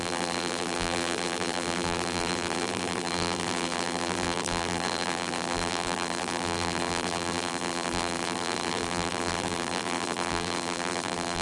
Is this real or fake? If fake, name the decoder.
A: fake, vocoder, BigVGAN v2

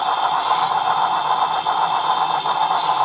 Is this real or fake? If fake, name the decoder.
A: real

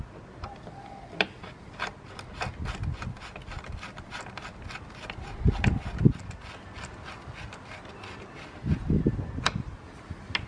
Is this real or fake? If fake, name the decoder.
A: real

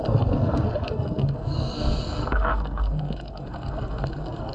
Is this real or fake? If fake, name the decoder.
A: fake, codec, SNAC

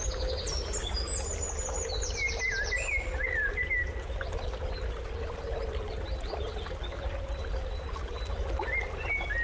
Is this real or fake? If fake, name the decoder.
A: real